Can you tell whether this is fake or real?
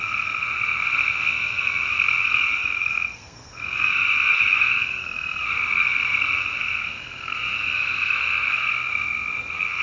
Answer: fake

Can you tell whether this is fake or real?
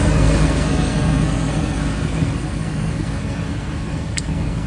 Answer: fake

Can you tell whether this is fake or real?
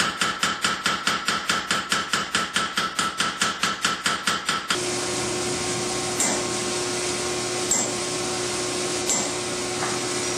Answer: real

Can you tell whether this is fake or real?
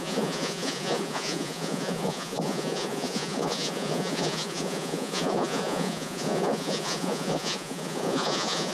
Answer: fake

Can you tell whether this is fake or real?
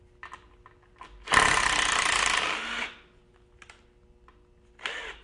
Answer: real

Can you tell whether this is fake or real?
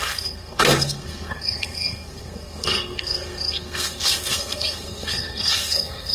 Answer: fake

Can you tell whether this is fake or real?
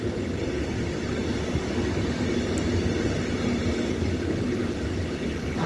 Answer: real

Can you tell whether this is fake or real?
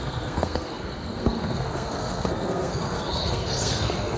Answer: fake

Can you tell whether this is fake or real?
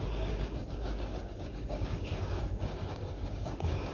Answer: fake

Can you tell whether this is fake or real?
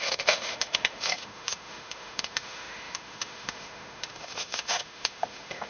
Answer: fake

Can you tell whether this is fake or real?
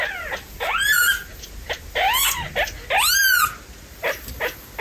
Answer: real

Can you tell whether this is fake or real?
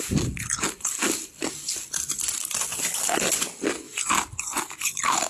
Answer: real